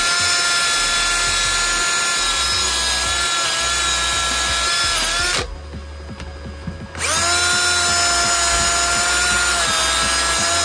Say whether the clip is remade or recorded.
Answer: recorded